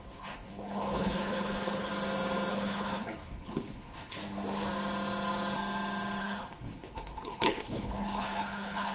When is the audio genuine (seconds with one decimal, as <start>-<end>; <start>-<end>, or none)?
1.9-2.5; 4.2-6.2